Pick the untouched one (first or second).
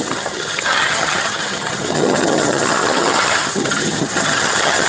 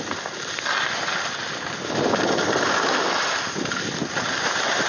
second